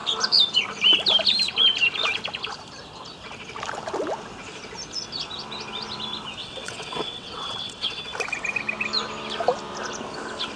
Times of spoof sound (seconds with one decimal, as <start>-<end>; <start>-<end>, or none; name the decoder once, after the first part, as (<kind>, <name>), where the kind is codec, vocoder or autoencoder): 6.4-8.0 (vocoder, WaveNeXt)

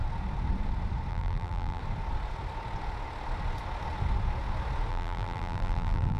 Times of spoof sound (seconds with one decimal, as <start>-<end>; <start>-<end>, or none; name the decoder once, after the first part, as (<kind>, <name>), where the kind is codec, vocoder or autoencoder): 1.1-1.8 (vocoder, BigVGAN v2); 4.9-6.2

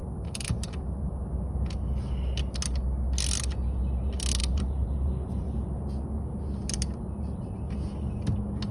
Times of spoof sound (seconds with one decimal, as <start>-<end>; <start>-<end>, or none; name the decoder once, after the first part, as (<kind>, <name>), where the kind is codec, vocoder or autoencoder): 4.4-7.7 (vocoder, BigVGAN v2)

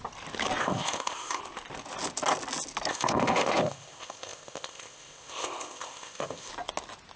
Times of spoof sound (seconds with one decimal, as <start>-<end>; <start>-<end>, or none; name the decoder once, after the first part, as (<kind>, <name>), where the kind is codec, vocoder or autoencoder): 0.6-1.4 (codec, ZipCodec); 2.9-6.5

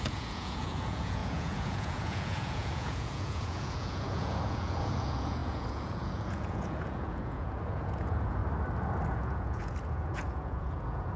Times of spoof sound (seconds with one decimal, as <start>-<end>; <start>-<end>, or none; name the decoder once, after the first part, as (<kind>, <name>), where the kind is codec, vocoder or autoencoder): 0.0-8.4 (vocoder, Vocos); 9.1-11.2

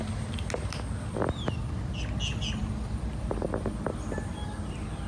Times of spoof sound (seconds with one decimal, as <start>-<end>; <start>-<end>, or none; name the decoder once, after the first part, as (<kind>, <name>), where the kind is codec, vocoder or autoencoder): none